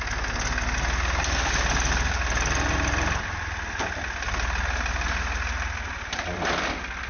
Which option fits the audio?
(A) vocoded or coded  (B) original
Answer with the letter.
B